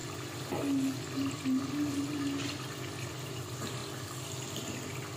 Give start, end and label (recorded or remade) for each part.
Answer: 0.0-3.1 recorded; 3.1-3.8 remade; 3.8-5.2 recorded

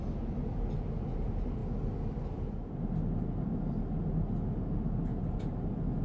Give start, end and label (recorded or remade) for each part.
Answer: 0.0-6.0 recorded

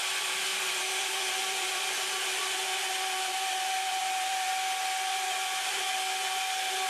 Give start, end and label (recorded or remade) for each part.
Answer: 0.0-0.5 recorded; 0.5-1.8 remade; 1.8-2.7 recorded; 2.7-4.5 remade; 4.5-5.1 recorded; 5.1-5.9 remade; 5.9-6.9 recorded

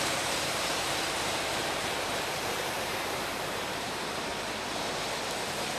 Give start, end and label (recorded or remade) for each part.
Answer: 0.0-4.3 remade; 4.3-5.2 recorded; 5.2-5.8 remade

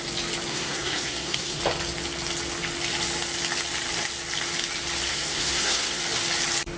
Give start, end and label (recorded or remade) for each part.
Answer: 0.0-0.5 recorded; 0.5-1.6 remade; 1.6-5.1 recorded; 5.1-6.0 remade; 6.0-6.8 recorded

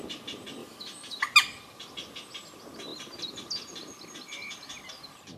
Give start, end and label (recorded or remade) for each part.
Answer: 0.0-0.6 recorded; 0.6-1.2 remade; 1.2-5.4 recorded